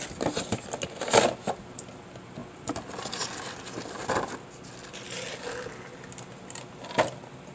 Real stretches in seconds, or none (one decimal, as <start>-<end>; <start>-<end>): 0.0-2.4; 3.6-7.5